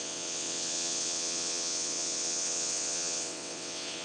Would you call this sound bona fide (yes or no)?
no